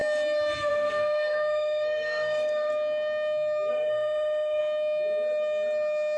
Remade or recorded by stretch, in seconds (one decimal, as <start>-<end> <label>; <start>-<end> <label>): 0.0-0.7 recorded; 0.7-2.7 remade; 2.7-3.7 recorded; 3.7-4.6 remade; 4.6-6.2 recorded